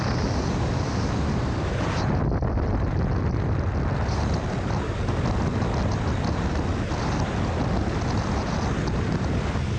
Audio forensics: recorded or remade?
recorded